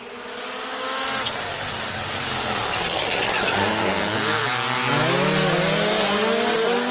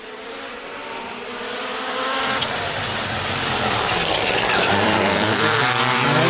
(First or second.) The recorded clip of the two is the first